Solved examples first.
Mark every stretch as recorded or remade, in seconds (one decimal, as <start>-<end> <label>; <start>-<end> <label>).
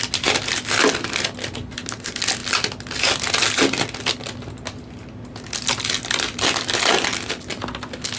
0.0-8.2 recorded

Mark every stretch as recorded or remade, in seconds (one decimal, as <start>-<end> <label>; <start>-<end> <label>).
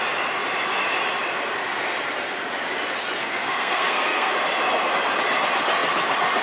0.0-3.2 recorded; 3.2-4.3 remade; 4.3-6.4 recorded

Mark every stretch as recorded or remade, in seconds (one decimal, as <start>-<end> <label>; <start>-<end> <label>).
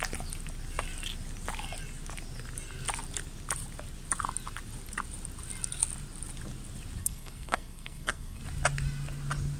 0.0-7.0 recorded; 7.0-8.4 remade; 8.4-9.6 recorded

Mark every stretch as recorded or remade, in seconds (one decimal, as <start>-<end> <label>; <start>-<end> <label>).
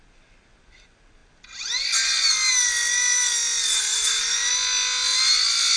0.0-3.9 recorded; 3.9-4.5 remade; 4.5-5.8 recorded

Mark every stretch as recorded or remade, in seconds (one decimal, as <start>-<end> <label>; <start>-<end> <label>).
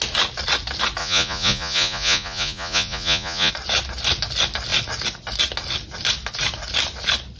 0.0-1.0 recorded; 1.0-3.5 remade; 3.5-7.4 recorded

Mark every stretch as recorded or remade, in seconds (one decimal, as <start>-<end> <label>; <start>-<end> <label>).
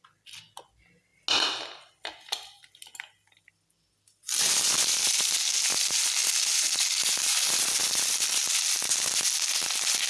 0.0-10.1 recorded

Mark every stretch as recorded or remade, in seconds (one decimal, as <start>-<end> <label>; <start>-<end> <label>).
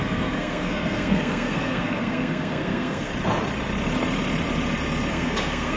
0.0-3.1 remade; 3.1-5.1 recorded; 5.1-5.8 remade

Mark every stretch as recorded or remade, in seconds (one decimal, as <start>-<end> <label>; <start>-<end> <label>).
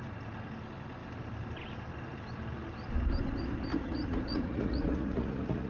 0.0-3.7 recorded; 3.7-5.7 remade